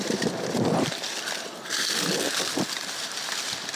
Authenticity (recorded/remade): recorded